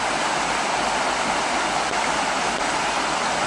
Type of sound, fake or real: real